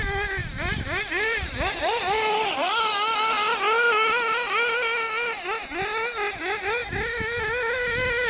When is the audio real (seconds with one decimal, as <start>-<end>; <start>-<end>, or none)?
0.0-0.4; 2.9-8.3